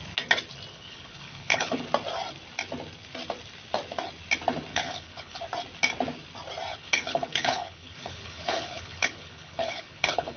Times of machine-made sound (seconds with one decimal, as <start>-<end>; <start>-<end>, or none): 0.7-1.8; 4.7-5.4; 6.7-10.4